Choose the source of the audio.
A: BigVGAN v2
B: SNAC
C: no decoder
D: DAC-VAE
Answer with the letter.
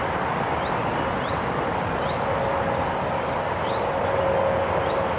C